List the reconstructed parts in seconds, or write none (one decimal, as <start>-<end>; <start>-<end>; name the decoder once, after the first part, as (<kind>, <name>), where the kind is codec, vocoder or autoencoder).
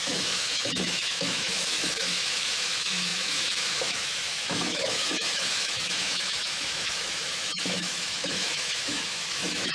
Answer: 0.0-9.7 (autoencoder, DAC-VAE)